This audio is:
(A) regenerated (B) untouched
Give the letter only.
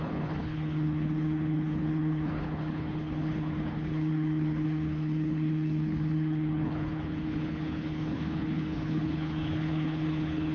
A